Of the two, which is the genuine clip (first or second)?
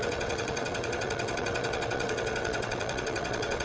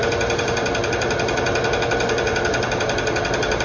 second